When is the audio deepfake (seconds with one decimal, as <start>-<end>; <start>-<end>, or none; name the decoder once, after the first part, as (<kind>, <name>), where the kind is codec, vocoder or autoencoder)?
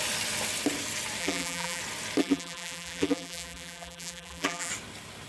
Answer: 1.2-1.8 (vocoder, BigVGAN v2); 2.2-4.7